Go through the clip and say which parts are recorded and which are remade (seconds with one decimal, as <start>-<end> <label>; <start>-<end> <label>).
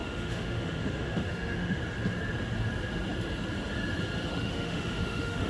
0.0-1.8 remade; 1.8-4.3 recorded; 4.3-5.5 remade